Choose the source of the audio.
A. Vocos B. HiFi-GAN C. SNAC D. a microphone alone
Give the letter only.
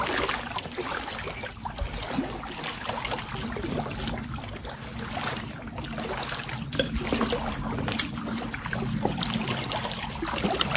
D